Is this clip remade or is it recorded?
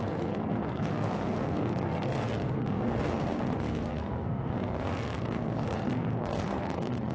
remade